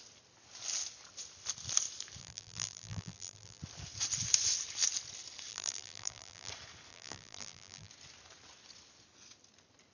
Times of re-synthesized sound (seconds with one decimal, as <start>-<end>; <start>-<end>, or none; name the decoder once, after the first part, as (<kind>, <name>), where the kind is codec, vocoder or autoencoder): 2.2-3.6 (vocoder, BigVGAN v2); 5.5-6.5; 6.9-7.9